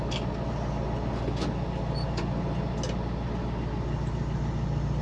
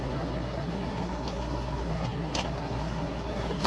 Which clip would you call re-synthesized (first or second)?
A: second